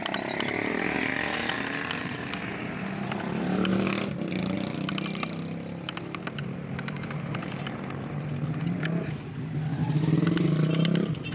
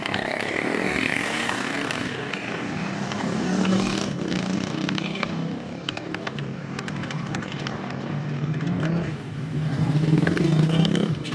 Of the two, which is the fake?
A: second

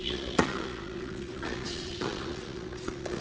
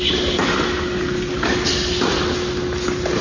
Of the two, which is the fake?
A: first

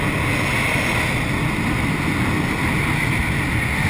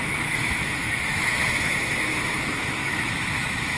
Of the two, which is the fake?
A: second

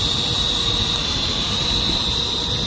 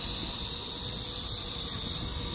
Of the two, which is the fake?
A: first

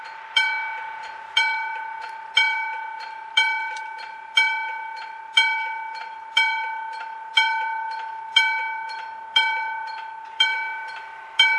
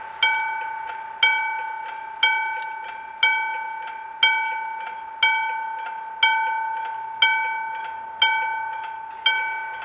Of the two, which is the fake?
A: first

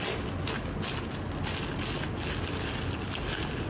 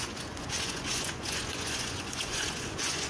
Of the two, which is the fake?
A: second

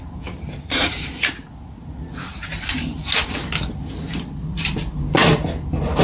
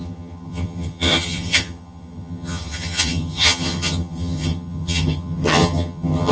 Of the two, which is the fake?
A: second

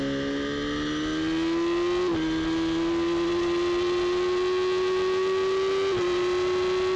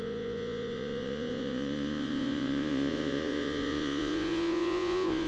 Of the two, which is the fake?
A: second